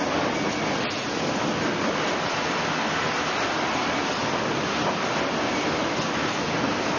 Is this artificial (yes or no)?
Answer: no